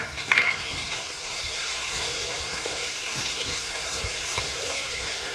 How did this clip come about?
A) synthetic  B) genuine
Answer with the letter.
A